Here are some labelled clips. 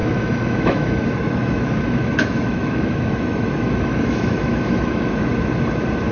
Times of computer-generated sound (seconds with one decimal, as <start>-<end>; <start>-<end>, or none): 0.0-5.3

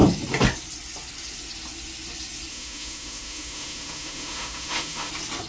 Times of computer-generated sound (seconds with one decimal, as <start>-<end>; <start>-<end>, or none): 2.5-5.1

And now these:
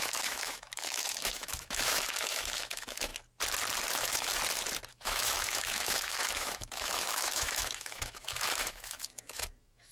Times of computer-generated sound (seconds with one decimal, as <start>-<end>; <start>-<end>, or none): 0.0-3.1; 3.9-4.3; 4.9-9.9

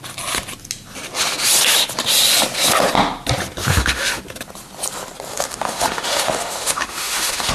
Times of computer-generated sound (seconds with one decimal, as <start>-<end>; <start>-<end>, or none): 3.6-4.2; 5.3-7.5

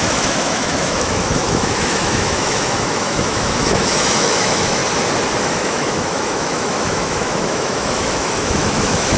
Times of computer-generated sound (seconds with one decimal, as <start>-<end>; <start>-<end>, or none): 0.0-4.8; 5.4-9.2

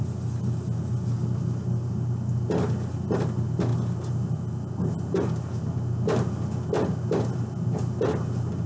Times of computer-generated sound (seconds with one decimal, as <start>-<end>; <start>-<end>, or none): none

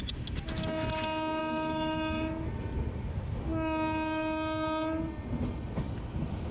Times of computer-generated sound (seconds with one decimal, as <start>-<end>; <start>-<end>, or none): 1.4-2.5